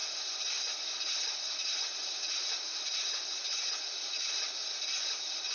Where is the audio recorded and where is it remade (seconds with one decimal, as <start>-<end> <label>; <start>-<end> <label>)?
0.0-5.5 recorded